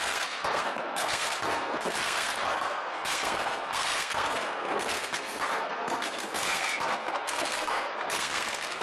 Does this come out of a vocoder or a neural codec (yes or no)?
yes